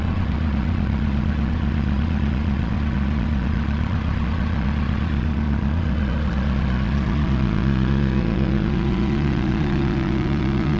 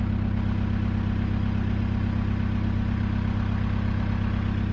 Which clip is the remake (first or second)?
first